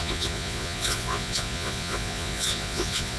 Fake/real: fake